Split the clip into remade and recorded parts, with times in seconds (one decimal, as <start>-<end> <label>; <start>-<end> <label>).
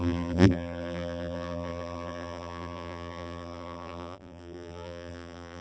0.0-5.6 remade